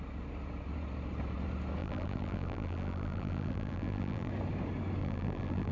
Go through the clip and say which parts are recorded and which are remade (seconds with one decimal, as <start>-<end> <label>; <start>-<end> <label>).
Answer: 0.0-1.8 recorded; 1.8-4.3 remade; 4.3-5.0 recorded; 5.0-5.7 remade